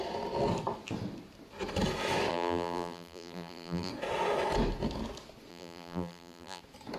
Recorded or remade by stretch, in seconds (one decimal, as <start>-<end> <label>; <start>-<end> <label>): 0.0-2.3 recorded; 2.3-3.9 remade; 3.9-5.5 recorded; 5.5-6.6 remade; 6.6-7.0 recorded